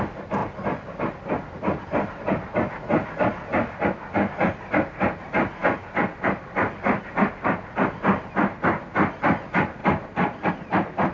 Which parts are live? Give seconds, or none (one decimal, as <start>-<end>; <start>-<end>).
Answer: 0.0-11.1